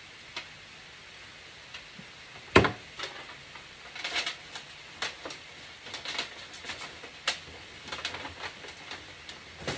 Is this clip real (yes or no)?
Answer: yes